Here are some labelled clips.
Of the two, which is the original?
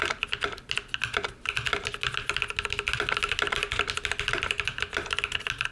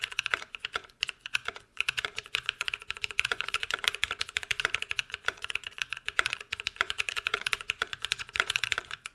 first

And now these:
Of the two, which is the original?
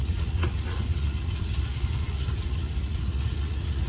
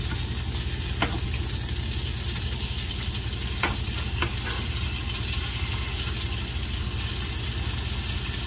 second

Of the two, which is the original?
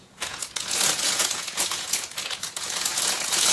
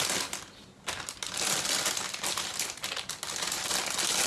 second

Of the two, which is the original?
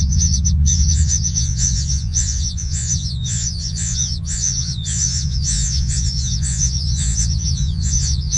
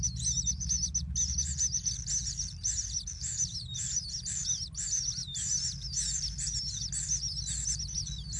second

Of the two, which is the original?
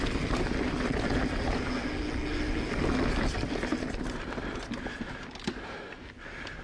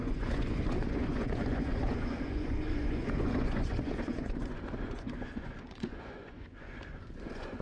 first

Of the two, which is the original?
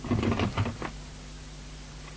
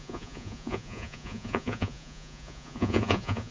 first